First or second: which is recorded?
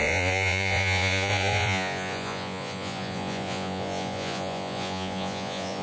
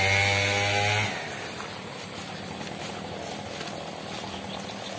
second